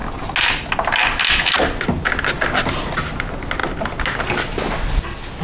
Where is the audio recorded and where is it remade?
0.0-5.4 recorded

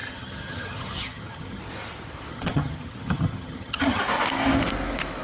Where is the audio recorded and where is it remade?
0.0-1.6 remade; 1.6-2.3 recorded; 2.3-4.0 remade; 4.0-5.2 recorded

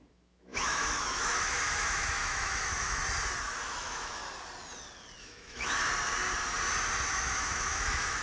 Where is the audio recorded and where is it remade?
0.0-3.0 remade; 3.0-3.6 recorded; 3.6-4.2 remade; 4.2-5.2 recorded; 5.2-5.8 remade; 5.8-7.1 recorded; 7.1-8.2 remade

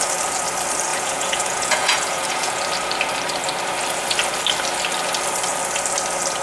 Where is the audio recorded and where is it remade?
0.0-0.9 recorded; 0.9-2.6 remade; 2.6-6.4 recorded

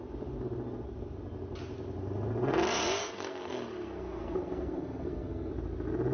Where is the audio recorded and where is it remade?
0.0-3.0 recorded; 3.0-5.5 remade; 5.5-6.1 recorded

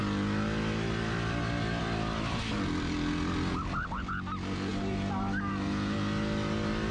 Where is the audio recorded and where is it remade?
0.0-6.9 recorded

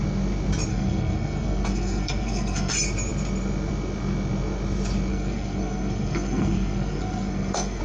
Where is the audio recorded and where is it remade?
0.0-0.7 recorded; 0.7-2.7 remade; 2.7-5.1 recorded; 5.1-7.8 remade